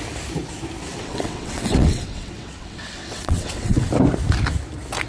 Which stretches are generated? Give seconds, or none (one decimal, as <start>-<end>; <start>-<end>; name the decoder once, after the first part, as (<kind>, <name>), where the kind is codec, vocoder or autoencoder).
0.9-3.9 (vocoder, WaveNeXt)